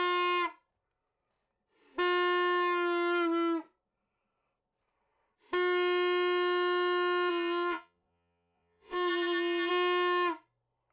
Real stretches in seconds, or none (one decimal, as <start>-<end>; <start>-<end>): 0.0-7.3; 9.7-10.9